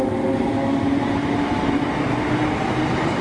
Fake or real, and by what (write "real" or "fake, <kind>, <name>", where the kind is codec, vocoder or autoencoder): real